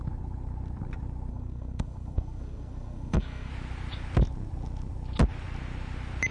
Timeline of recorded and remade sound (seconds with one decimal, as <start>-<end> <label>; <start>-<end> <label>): 0.0-1.3 recorded; 1.3-3.5 remade; 3.5-6.3 recorded